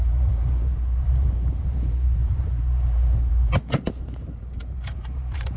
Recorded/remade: remade